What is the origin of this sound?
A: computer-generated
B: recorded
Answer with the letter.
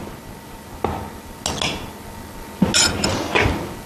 B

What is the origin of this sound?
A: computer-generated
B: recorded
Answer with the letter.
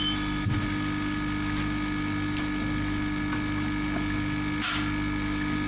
B